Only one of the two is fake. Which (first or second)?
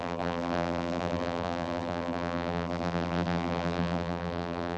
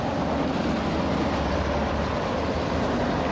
first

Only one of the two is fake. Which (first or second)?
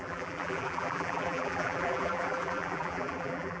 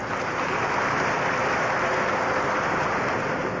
first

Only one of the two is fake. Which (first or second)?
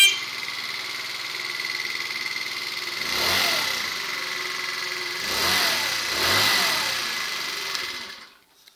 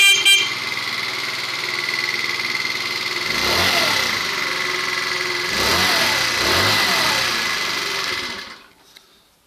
first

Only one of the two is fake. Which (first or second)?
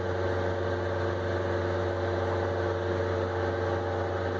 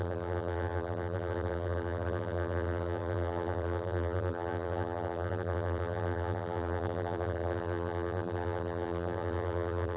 second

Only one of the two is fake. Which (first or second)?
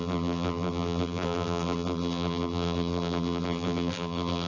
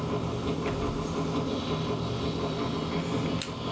first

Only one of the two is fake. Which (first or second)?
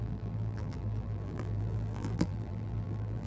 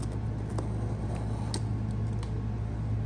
first